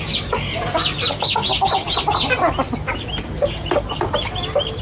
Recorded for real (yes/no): yes